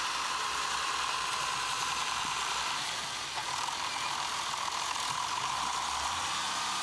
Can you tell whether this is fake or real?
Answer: fake